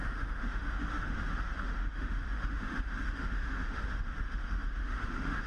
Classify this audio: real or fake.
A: fake